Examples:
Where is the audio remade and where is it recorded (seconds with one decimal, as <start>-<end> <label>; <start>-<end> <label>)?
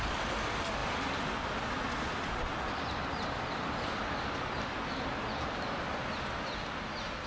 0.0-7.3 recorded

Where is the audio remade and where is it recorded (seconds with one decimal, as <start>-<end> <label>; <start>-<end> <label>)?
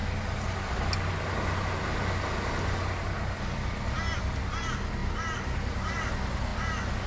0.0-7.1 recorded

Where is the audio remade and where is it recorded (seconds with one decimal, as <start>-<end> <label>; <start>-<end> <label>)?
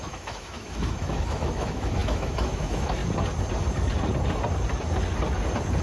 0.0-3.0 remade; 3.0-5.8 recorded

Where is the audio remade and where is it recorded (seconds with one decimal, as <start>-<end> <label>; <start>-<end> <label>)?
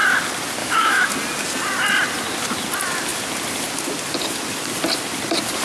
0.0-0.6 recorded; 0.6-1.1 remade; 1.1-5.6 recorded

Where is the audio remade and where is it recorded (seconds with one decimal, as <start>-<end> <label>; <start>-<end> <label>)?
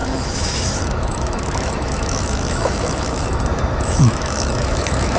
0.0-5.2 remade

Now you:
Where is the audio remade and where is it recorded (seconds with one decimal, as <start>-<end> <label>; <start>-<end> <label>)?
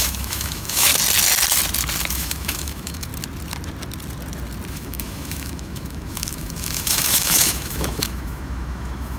0.0-0.9 remade; 0.9-2.0 recorded; 2.0-3.1 remade; 3.1-4.7 recorded; 4.7-9.2 remade